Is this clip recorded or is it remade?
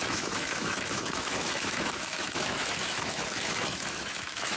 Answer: remade